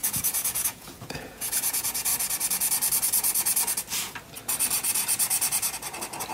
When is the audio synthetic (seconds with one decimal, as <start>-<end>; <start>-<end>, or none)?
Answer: 0.0-2.1